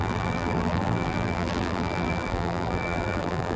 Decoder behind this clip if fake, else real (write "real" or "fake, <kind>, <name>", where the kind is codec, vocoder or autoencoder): fake, vocoder, BigVGAN v2